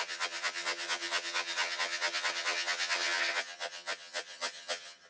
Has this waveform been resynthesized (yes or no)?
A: yes